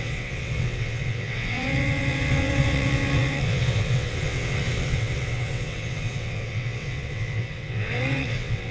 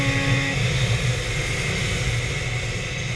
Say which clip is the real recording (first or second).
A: second